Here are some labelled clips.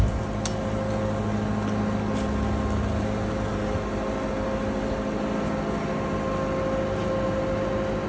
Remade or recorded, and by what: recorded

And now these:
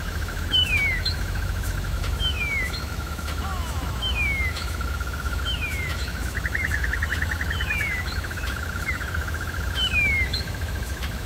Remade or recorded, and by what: remade, autoencoder, DAC-VAE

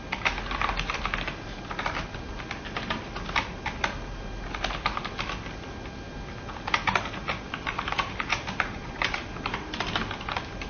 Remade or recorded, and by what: recorded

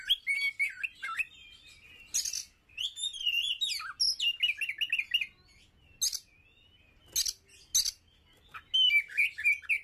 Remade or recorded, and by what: recorded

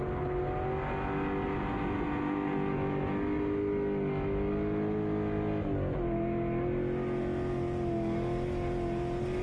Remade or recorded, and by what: recorded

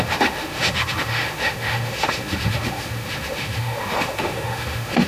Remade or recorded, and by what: remade, autoencoder, DAC-VAE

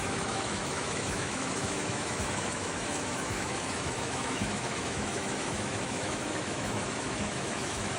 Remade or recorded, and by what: remade, autoencoder, DAC-VAE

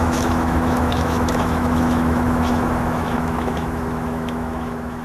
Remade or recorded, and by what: remade, autoencoder, DAC-VAE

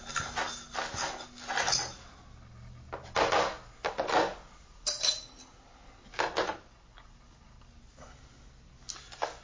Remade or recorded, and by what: recorded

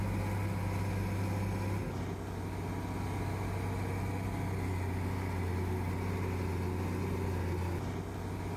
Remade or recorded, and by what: recorded